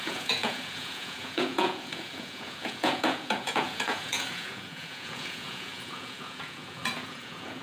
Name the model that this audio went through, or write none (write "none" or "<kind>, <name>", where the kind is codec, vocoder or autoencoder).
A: vocoder, Vocos